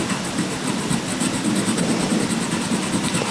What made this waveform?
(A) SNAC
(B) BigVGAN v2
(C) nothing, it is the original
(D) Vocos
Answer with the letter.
B